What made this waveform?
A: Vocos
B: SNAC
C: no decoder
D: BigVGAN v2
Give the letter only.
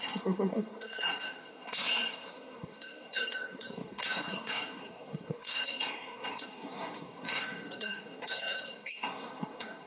B